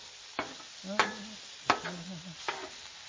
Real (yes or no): yes